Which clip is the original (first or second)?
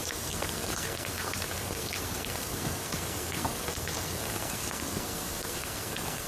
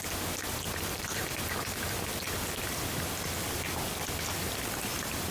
second